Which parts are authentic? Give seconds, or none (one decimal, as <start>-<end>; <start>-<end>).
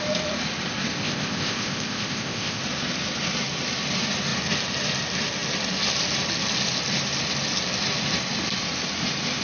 0.0-1.0; 2.6-9.4